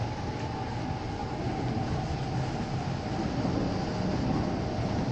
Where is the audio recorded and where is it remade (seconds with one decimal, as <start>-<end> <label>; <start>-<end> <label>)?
0.0-5.1 recorded

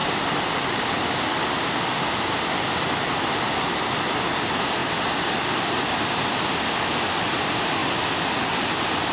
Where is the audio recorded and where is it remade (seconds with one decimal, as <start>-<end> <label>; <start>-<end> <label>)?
0.0-9.1 recorded

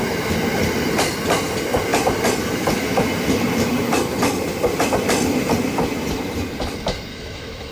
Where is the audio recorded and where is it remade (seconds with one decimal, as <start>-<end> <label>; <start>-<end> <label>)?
0.0-7.1 recorded; 7.1-7.7 remade

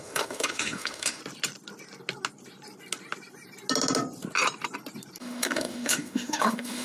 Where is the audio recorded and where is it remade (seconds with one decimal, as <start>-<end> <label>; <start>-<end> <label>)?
0.0-1.2 remade; 1.2-5.2 recorded; 5.2-6.8 remade

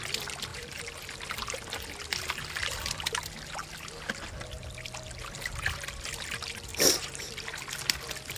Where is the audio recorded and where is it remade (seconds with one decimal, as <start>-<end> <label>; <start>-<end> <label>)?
0.0-0.5 recorded; 0.5-1.1 remade; 1.1-6.7 recorded; 6.7-7.3 remade; 7.3-8.4 recorded

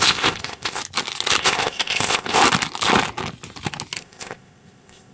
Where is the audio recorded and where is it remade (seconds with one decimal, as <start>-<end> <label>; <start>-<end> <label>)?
0.0-0.8 remade; 0.8-1.4 recorded; 1.4-2.4 remade; 2.4-4.0 recorded; 4.0-5.1 remade

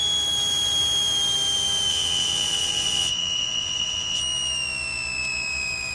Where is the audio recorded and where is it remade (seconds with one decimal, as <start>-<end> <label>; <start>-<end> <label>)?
0.0-1.9 recorded; 1.9-4.2 remade; 4.2-5.9 recorded

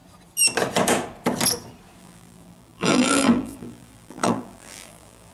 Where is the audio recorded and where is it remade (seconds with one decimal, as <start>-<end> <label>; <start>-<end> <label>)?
0.0-2.0 recorded; 2.0-5.3 remade